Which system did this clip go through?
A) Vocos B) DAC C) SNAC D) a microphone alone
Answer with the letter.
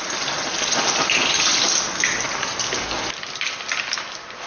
D